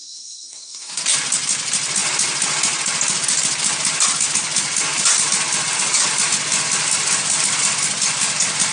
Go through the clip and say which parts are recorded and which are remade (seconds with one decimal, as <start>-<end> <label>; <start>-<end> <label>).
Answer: 0.0-1.0 remade; 1.0-8.7 recorded